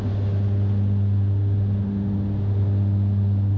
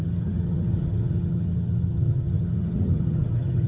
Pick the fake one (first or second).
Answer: second